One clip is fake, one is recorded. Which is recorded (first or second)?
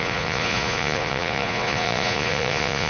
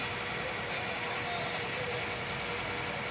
second